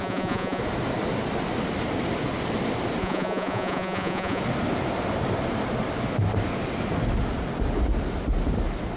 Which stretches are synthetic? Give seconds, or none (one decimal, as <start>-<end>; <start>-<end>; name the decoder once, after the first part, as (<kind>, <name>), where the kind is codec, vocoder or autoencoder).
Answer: 0.0-0.6 (vocoder, Vocos); 3.0-4.4